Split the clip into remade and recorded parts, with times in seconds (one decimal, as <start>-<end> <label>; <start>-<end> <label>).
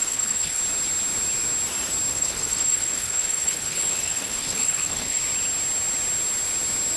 0.0-0.6 remade; 0.6-2.1 recorded; 2.1-5.2 remade; 5.2-7.0 recorded